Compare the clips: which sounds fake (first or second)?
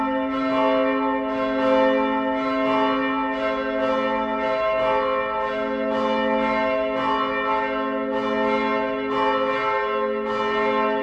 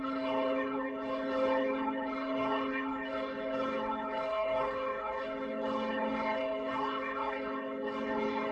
second